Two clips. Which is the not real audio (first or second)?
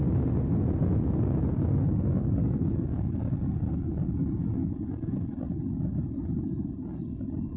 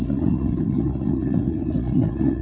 second